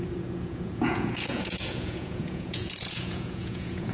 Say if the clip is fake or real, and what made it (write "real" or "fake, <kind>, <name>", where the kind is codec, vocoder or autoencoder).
fake, vocoder, Vocos